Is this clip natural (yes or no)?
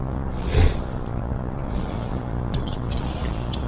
no